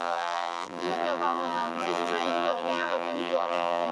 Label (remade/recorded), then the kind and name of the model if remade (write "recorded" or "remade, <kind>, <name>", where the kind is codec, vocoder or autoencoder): remade, vocoder, BigVGAN v2